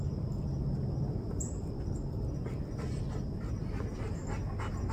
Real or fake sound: real